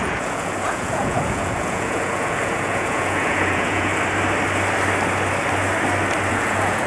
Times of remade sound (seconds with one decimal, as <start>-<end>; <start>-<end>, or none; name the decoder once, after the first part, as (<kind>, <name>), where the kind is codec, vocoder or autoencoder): 0.0-3.9 (vocoder, Vocos); 6.3-6.9